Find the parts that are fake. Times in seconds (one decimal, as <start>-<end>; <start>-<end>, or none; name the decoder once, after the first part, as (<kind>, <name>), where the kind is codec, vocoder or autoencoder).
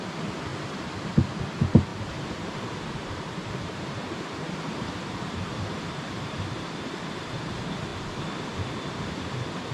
0.5-1.1 (vocoder, BigVGAN v2); 1.9-7.0